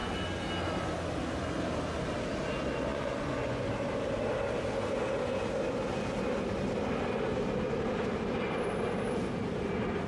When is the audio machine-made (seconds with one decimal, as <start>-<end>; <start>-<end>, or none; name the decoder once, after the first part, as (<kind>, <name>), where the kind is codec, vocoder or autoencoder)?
2.9-3.7 (vocoder, Vocos)